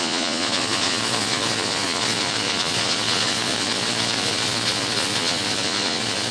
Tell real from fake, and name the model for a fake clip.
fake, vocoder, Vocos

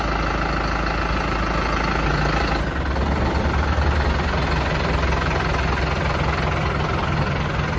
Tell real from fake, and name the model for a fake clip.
real